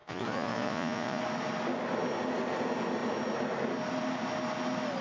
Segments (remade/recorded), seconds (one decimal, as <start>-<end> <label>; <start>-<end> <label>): 0.0-1.2 remade; 1.2-5.0 recorded